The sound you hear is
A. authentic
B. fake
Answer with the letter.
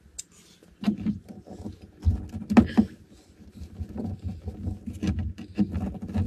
A